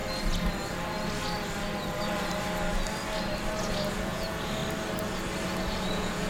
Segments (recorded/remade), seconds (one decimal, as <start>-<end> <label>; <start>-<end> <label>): 0.0-3.6 recorded; 3.6-4.6 remade; 4.6-5.6 recorded; 5.6-6.3 remade